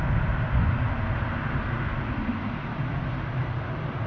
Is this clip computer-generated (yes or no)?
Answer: no